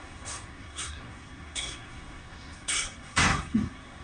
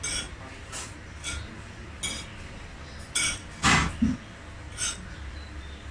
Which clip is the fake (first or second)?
first